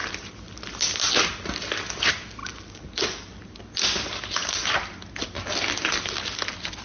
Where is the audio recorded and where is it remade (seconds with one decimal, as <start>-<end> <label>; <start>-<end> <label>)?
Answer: 0.0-6.8 recorded